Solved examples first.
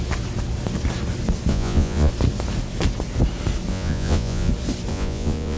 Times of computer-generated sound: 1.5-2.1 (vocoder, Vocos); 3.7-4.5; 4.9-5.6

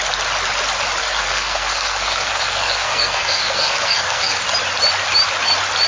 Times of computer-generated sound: 1.0-4.4 (codec, SNAC)

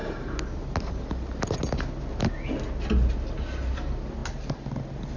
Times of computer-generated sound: none